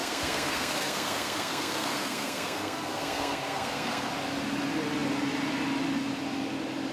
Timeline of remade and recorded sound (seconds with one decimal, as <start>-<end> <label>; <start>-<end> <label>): 0.0-4.1 remade; 4.1-6.9 recorded